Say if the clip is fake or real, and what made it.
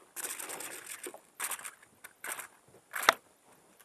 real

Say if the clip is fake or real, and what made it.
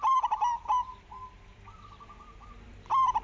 fake, vocoder, BigVGAN v2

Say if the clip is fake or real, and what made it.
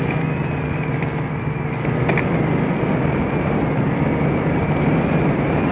fake, vocoder, BigVGAN v2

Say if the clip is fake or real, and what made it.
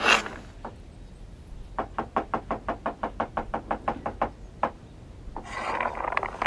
real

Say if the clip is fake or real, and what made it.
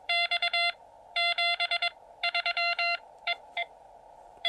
fake, vocoder, BigVGAN v2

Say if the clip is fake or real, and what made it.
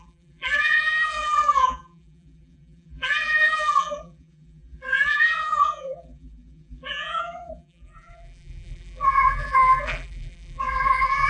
fake, vocoder, BigVGAN v2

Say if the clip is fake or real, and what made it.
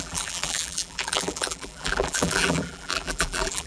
fake, vocoder, BigVGAN v2